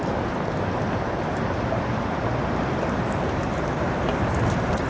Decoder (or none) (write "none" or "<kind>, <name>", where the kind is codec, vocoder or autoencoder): none